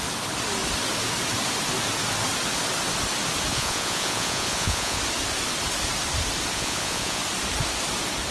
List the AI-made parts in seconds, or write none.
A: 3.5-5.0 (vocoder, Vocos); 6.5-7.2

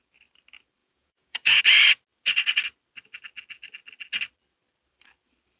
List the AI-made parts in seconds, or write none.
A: 0.8-1.6 (vocoder, Vocos)

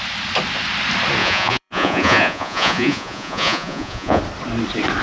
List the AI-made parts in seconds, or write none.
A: 1.2-4.2 (vocoder, Vocos)

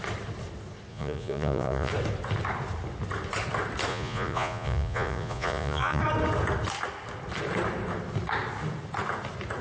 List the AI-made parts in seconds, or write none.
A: 0.9-1.9 (vocoder, Vocos); 3.9-6.0

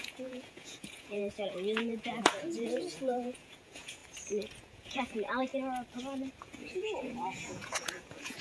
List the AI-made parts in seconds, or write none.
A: 0.0-4.0 (vocoder, Vocos); 4.6-5.5; 6.4-8.4